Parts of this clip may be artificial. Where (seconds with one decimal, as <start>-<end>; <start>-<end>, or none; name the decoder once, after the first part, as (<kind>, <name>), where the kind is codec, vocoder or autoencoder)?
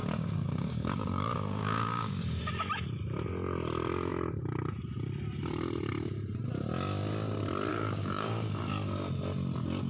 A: 0.0-2.4 (codec, DAC); 7.7-8.7